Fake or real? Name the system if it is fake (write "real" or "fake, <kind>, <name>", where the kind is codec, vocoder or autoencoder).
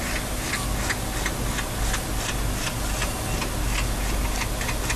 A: real